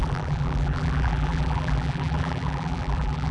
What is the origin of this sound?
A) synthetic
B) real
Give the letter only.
A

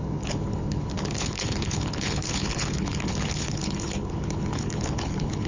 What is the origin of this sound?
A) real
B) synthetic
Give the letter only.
B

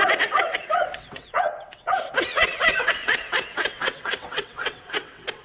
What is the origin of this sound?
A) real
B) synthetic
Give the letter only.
B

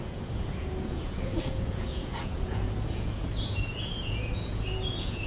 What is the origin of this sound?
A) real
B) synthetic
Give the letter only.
B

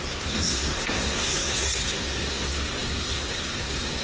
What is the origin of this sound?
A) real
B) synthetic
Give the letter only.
B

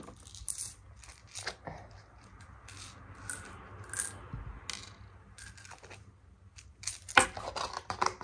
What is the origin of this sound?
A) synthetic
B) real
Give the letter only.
B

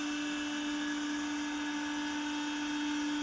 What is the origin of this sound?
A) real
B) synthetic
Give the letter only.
A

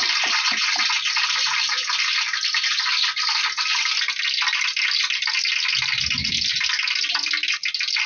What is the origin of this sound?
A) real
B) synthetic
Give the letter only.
A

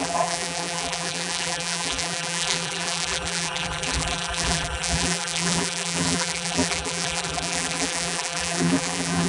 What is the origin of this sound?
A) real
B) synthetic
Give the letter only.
B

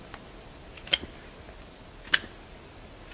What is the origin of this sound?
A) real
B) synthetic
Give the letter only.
A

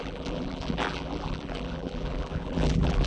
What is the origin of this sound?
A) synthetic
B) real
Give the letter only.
A